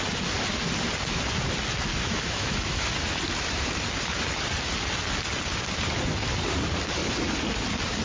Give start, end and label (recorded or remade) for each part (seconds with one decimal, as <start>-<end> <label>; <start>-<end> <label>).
0.0-1.9 recorded; 1.9-2.9 remade; 2.9-8.0 recorded